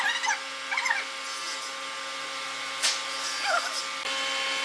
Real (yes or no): yes